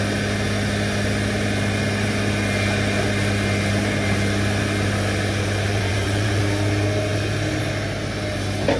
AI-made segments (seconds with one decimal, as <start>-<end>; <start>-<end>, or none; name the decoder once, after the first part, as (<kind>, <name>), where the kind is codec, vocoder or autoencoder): 5.7-6.4 (vocoder, Vocos)